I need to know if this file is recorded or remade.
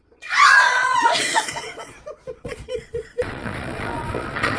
remade